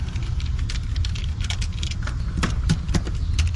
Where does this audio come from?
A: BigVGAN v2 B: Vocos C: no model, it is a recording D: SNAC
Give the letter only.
A